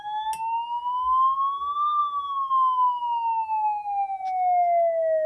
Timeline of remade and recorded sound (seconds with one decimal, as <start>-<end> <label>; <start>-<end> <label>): 0.0-5.3 recorded